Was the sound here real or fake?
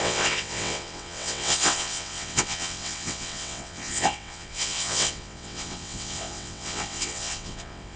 fake